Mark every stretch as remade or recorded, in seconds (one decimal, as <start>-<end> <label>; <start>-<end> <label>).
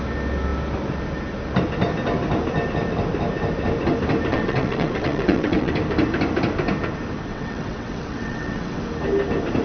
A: 0.0-4.3 recorded; 4.3-5.7 remade; 5.7-7.3 recorded; 7.3-8.8 remade; 8.8-9.6 recorded